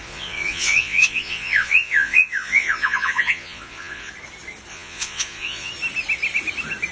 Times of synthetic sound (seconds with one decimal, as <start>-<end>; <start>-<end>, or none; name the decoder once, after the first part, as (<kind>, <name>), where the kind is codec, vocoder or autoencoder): 0.0-4.1 (vocoder, Vocos); 4.7-5.7